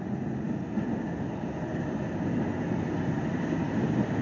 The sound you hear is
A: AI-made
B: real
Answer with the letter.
B